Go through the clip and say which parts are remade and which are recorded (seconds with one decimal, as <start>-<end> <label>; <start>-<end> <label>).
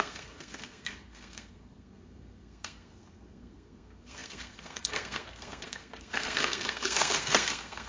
0.0-7.9 remade